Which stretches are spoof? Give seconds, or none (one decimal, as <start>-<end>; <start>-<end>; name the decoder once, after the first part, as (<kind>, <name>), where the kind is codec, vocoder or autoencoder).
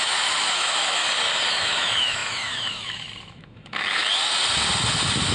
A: 0.0-1.0 (autoencoder, DAC-VAE); 1.5-4.0